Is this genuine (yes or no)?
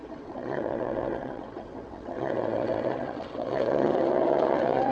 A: no